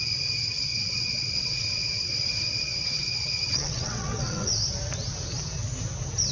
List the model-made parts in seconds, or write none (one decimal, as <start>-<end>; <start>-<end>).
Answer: 0.7-4.5